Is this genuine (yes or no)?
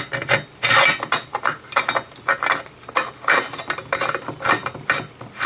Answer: yes